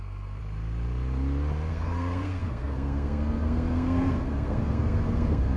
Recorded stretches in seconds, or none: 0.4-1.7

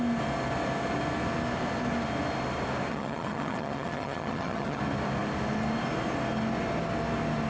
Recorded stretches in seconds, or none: 0.0-2.9; 4.8-7.5

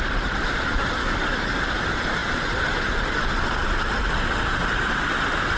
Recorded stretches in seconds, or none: 0.0-1.0; 1.6-5.6